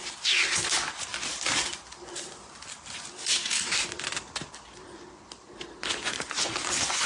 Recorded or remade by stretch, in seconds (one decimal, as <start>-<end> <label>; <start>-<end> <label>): 0.0-5.8 recorded; 5.8-7.1 remade